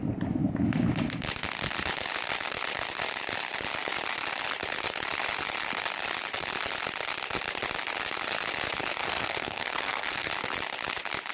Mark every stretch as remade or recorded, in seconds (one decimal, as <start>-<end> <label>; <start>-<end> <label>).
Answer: 0.0-9.0 recorded; 9.0-10.3 remade; 10.3-11.3 recorded